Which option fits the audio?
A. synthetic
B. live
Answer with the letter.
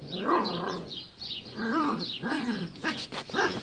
A